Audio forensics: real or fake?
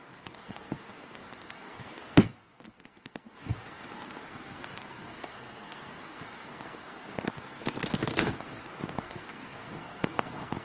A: fake